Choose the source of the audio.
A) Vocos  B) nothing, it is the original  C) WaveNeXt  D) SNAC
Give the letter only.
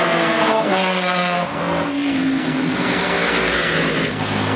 D